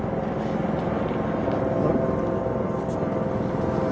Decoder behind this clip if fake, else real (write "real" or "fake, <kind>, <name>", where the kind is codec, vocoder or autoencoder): real